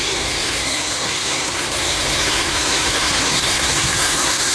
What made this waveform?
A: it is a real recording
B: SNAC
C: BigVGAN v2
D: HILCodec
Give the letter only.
B